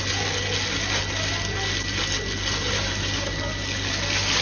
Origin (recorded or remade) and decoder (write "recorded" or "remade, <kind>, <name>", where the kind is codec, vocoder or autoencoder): recorded